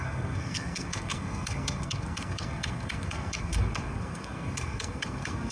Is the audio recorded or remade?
remade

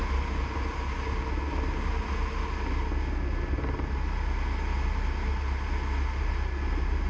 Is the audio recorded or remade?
recorded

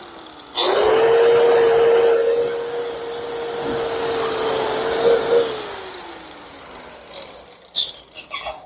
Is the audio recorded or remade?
recorded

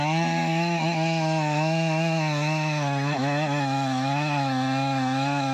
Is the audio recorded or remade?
remade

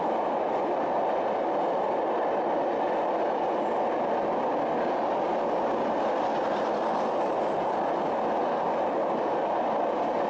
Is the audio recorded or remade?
recorded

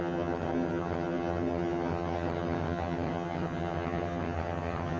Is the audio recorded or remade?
remade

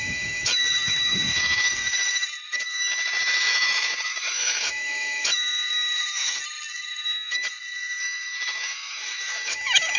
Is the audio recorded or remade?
remade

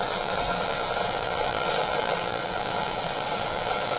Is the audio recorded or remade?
remade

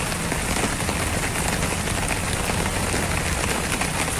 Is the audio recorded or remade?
recorded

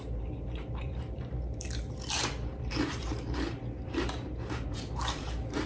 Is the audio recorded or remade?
remade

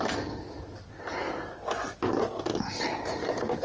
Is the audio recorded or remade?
recorded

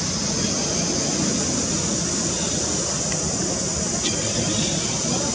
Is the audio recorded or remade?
recorded